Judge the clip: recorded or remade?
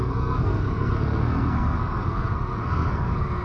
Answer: remade